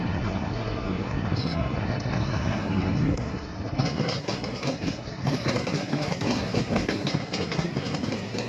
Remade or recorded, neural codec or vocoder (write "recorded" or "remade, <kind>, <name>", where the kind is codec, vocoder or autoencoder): remade, codec, SNAC